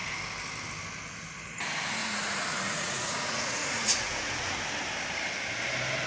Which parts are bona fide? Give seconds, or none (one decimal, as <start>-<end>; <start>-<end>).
0.0-2.0; 4.6-6.1

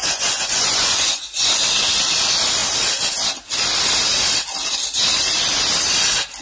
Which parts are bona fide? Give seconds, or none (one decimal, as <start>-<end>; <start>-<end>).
1.5-6.4

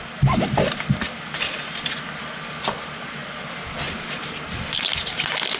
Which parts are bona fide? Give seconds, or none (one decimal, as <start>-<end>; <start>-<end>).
0.0-5.6